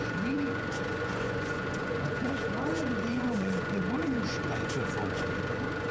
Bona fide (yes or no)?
no